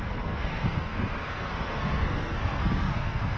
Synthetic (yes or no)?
yes